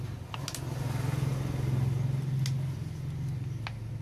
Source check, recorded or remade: recorded